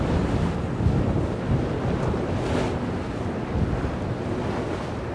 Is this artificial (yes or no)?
no